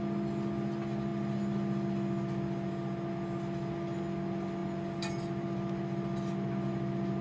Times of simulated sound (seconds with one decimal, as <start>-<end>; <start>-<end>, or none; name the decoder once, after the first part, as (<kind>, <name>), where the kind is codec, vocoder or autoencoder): none